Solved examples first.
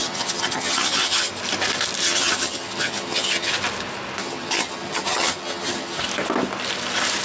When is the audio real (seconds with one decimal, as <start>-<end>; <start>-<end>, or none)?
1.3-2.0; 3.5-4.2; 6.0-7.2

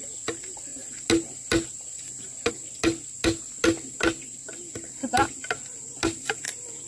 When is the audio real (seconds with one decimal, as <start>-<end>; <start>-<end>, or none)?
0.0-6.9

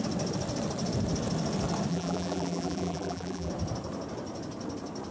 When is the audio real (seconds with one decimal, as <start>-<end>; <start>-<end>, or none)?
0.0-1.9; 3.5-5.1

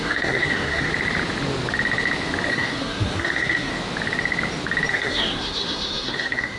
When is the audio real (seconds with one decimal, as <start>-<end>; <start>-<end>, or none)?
0.9-2.5; 3.7-4.9

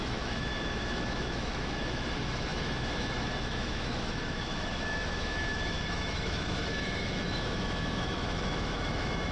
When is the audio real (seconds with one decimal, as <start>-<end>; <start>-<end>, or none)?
none

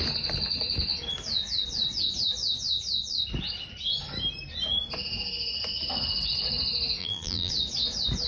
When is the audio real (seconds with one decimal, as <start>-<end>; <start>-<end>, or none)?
0.0-7.0; 7.5-8.3

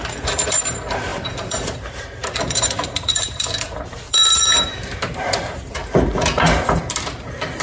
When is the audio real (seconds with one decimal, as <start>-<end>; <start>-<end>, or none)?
5.8-7.6